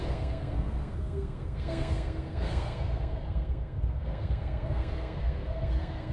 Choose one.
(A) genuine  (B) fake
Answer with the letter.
B